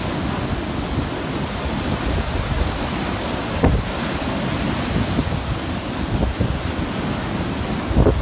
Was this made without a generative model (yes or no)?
yes